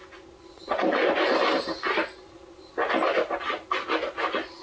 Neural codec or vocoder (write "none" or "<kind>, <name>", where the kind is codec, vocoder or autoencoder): none